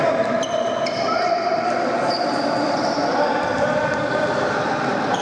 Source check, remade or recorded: remade